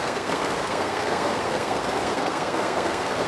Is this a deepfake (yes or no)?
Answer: yes